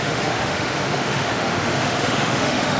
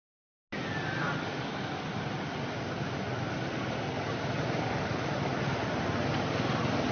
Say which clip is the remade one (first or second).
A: first